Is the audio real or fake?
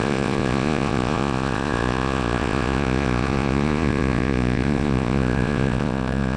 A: fake